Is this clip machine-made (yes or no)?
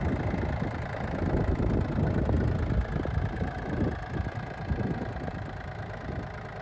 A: no